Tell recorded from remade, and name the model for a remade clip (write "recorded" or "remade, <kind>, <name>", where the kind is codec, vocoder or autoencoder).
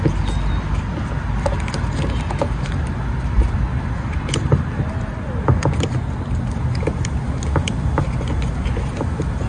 recorded